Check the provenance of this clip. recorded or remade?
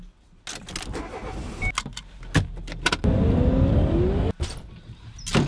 recorded